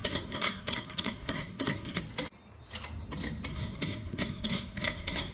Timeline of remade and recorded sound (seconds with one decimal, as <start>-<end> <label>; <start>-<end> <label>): 0.0-2.0 remade; 2.0-3.5 recorded; 3.5-5.3 remade